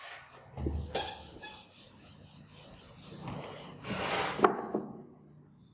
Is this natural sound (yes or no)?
yes